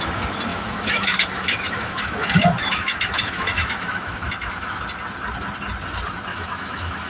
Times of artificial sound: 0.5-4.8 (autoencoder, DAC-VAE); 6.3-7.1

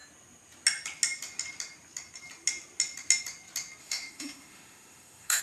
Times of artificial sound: 3.8-5.4 (autoencoder, DAC-VAE)

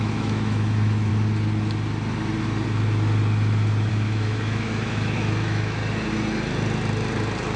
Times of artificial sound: 0.0-1.1 (autoencoder, DAC-VAE); 3.9-5.8

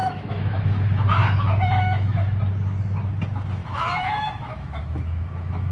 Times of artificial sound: 0.0-2.4 (autoencoder, DAC-VAE); 3.6-5.7

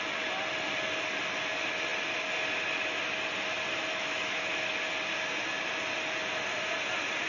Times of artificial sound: 3.9-4.7 (autoencoder, DAC-VAE)

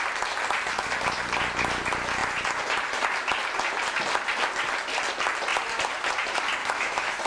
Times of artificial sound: 6.6-7.3 (autoencoder, DAC-VAE)